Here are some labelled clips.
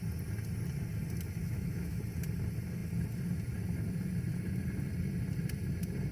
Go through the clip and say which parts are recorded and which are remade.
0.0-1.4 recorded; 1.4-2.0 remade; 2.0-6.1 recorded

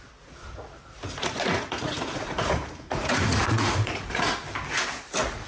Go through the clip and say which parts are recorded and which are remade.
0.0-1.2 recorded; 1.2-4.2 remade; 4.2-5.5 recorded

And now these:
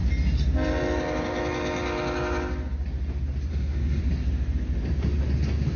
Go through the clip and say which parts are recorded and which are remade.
0.0-3.5 recorded; 3.5-4.0 remade; 4.0-5.8 recorded

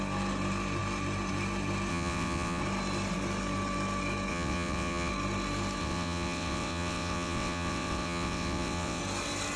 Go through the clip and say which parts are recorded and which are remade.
0.0-1.9 recorded; 1.9-2.6 remade; 2.6-4.3 recorded; 4.3-5.1 remade; 5.1-5.8 recorded; 5.8-9.0 remade; 9.0-9.6 recorded

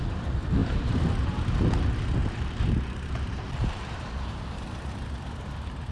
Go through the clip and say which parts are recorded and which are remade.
0.0-0.6 recorded; 0.6-1.4 remade; 1.4-2.2 recorded; 2.2-4.9 remade; 4.9-5.9 recorded